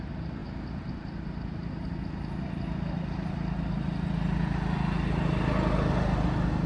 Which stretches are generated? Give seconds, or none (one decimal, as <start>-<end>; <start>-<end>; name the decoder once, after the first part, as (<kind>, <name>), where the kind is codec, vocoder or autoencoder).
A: none